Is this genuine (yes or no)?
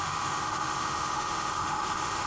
no